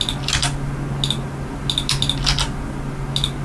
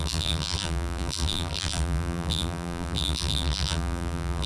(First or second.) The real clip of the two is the first